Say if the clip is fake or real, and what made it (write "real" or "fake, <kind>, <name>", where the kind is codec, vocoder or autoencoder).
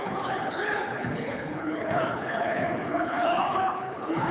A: fake, codec, HILCodec